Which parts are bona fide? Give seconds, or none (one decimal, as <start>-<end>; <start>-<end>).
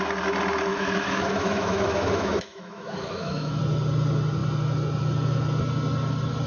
0.0-0.7; 3.6-6.5